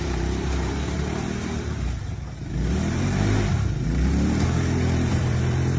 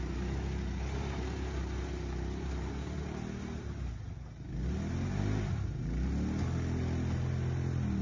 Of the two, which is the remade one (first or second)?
first